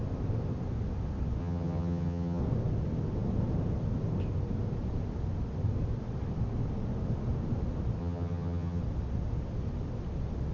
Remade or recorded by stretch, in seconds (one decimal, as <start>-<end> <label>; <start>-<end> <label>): 0.0-1.4 recorded; 1.4-2.4 remade; 2.4-8.0 recorded; 8.0-8.8 remade; 8.8-10.5 recorded